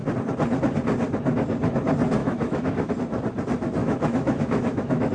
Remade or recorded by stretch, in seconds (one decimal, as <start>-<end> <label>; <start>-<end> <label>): 0.0-2.2 recorded; 2.2-2.9 remade; 2.9-3.8 recorded; 3.8-5.1 remade